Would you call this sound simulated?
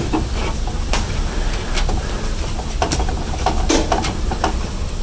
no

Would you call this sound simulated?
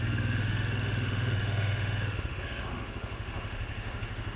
yes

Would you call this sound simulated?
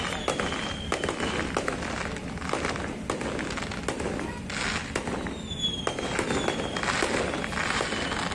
no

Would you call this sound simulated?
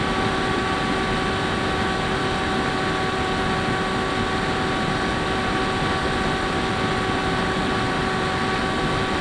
no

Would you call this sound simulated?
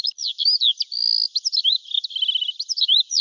no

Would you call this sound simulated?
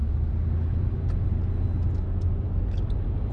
no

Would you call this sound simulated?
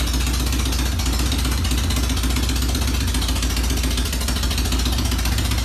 no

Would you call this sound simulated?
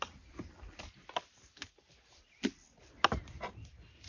no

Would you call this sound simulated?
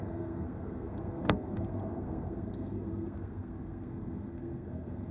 yes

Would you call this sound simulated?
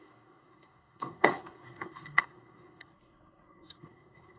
yes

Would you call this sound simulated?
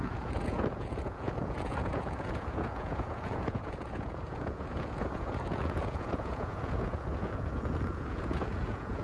yes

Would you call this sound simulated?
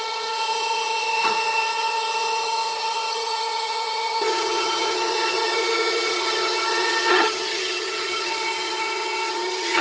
yes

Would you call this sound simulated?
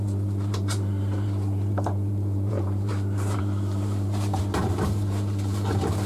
yes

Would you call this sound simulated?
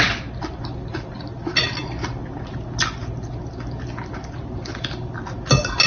no